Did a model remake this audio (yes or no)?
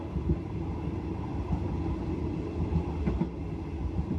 no